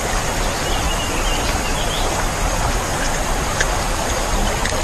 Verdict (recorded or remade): recorded